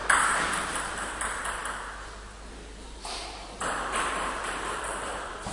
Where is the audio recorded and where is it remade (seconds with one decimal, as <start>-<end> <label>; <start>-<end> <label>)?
0.0-5.5 remade